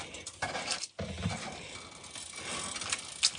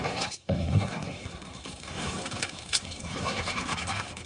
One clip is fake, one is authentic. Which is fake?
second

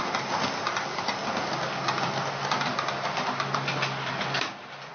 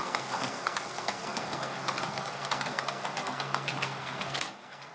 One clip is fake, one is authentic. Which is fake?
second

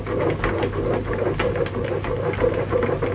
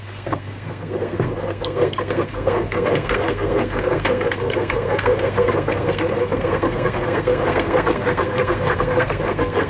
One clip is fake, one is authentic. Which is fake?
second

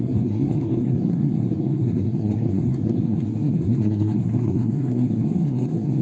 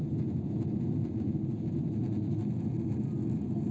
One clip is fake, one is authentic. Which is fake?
first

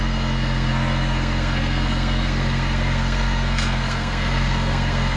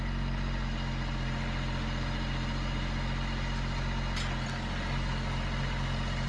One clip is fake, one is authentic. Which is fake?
first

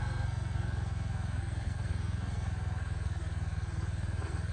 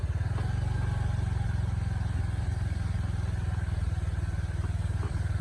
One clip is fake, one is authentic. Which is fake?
first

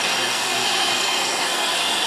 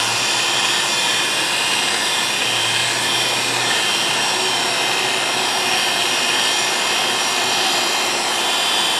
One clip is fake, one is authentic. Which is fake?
first